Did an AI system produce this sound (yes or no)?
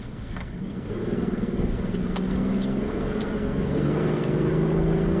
yes